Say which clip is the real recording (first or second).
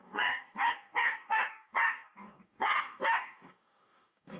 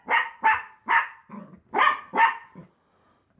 second